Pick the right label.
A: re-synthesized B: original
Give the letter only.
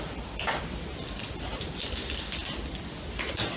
B